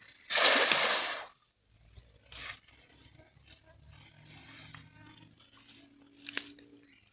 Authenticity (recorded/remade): recorded